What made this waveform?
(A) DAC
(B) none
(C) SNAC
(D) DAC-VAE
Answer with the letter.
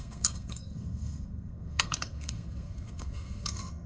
C